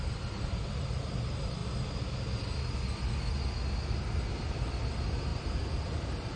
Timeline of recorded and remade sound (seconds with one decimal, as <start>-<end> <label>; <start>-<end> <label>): 0.0-1.6 remade; 1.6-4.3 recorded; 4.3-6.4 remade